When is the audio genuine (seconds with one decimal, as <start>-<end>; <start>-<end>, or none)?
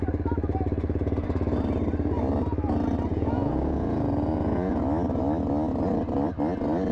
0.0-3.1; 4.8-6.9